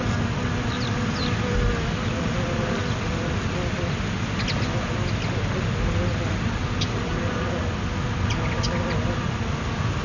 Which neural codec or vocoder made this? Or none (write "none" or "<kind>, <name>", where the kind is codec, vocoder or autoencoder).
none